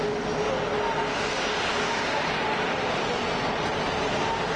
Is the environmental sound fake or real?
real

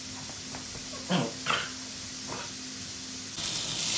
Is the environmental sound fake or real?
real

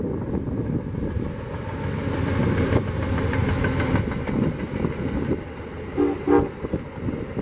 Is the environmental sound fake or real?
real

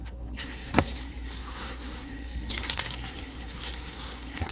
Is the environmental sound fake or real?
fake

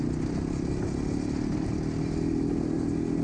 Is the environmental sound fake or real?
real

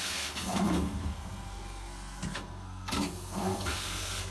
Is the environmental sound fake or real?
fake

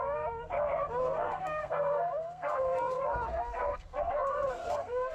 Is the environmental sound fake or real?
fake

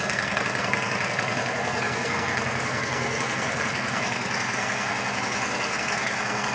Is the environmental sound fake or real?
fake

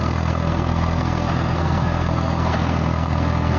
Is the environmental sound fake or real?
fake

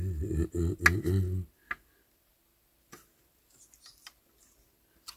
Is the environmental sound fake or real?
real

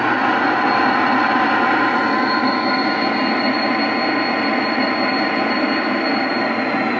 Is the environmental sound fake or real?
real